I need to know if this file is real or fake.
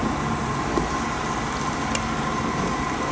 real